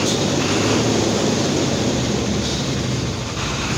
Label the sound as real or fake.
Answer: real